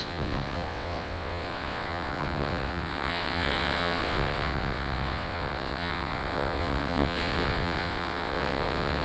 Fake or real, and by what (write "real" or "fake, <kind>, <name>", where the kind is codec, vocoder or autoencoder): fake, vocoder, WaveNeXt